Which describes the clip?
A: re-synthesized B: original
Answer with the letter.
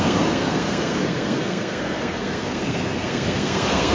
A